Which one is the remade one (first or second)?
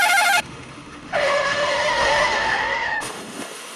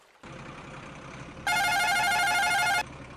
first